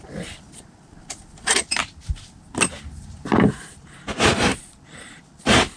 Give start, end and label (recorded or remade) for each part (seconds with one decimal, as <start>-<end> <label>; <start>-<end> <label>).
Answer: 0.0-1.8 recorded; 1.8-5.3 remade; 5.3-5.8 recorded